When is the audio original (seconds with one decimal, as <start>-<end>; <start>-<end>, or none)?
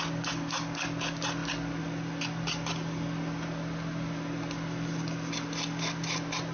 0.0-6.5